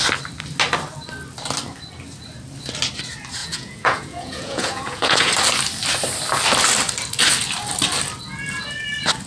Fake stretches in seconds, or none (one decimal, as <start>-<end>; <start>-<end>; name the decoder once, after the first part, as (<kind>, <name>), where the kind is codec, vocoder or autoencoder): 3.4-5.3 (vocoder, Vocos)